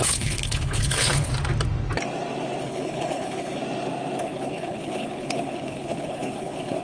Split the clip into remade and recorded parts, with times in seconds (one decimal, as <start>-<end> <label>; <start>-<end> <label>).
0.0-1.3 remade; 1.3-2.6 recorded; 2.6-3.6 remade; 3.6-4.2 recorded; 4.2-6.8 remade